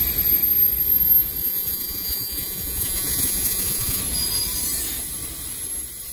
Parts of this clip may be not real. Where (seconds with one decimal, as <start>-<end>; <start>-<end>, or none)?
1.4-4.0